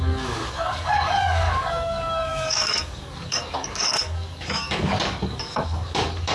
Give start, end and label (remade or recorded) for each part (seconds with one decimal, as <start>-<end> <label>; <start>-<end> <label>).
0.0-6.3 remade